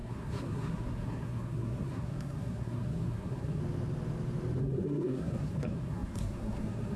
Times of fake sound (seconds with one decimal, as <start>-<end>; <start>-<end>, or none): 0.0-3.6; 4.6-7.0